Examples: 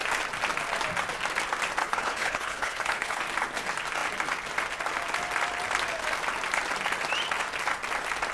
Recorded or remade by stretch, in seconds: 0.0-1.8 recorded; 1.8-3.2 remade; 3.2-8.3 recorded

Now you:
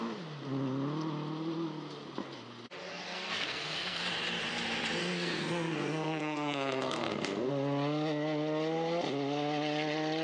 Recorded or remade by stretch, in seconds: 0.0-2.9 recorded; 2.9-4.1 remade; 4.1-5.0 recorded; 5.0-7.5 remade; 7.5-10.2 recorded